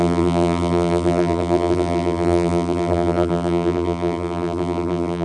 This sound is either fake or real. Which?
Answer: fake